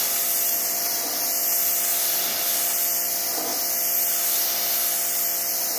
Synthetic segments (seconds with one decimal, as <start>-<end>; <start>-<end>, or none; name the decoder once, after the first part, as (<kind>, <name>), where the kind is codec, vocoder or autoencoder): none